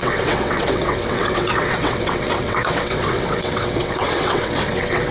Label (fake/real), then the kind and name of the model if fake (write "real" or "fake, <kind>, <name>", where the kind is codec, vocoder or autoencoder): fake, vocoder, WaveNeXt